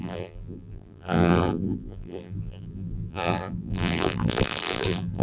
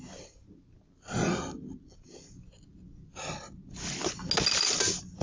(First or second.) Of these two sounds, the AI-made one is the first